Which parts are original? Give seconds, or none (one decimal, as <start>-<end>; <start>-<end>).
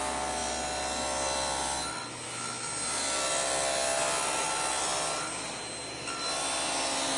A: 0.0-7.2